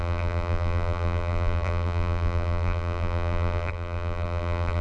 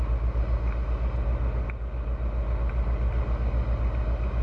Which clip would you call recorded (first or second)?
second